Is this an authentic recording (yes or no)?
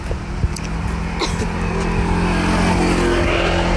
yes